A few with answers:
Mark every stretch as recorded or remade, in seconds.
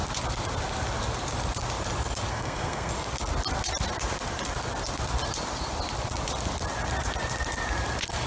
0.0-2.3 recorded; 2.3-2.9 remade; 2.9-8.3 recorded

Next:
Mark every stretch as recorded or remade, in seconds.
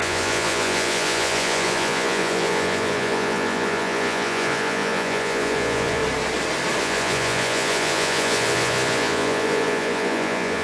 0.0-6.0 remade; 6.0-6.8 recorded; 6.8-10.6 remade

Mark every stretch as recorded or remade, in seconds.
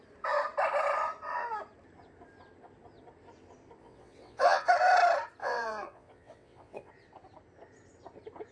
0.0-3.8 recorded; 3.8-4.7 remade; 4.7-5.4 recorded; 5.4-6.9 remade; 6.9-8.5 recorded